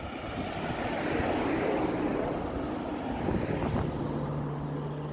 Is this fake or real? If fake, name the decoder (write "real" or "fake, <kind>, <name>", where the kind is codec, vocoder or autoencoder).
real